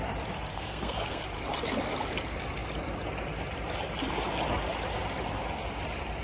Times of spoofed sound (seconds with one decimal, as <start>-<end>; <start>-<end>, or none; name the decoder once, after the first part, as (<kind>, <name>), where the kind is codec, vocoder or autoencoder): 0.5-1.2 (codec, SNAC)